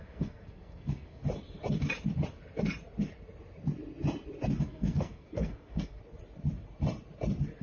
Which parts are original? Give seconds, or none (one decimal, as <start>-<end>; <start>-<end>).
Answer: 1.2-4.6; 6.0-7.6